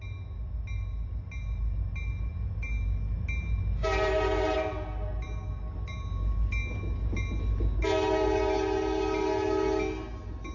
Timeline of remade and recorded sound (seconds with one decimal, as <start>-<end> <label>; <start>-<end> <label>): 0.0-10.5 recorded